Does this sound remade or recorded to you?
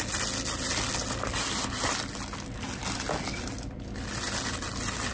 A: recorded